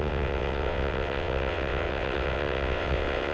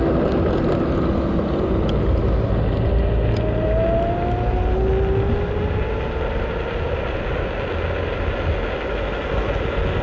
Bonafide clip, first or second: second